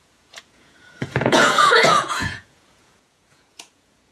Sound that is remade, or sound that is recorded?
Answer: remade